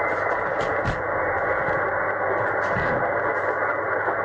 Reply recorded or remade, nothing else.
recorded